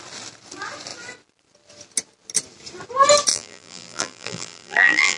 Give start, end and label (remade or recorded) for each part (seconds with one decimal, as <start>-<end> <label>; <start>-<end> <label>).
0.0-3.3 recorded; 3.3-5.2 remade